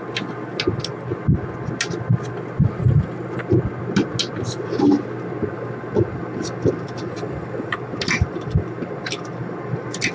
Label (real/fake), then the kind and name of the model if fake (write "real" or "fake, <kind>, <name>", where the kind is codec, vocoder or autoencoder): real